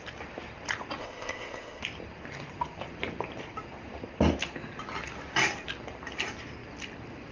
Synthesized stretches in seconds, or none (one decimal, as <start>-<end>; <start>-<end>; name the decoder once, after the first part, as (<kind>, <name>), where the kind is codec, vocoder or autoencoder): 1.0-1.8 (codec, ZipCodec)